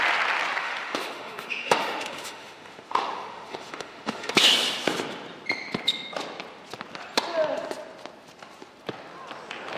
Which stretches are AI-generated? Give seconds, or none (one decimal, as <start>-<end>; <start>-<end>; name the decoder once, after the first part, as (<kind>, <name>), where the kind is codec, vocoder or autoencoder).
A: 0.6-4.5 (autoencoder, DAC-VAE)